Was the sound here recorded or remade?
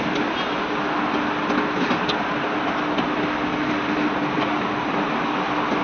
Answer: recorded